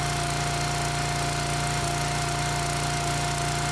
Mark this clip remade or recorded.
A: recorded